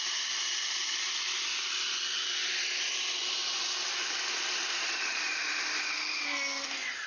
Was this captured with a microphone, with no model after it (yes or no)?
yes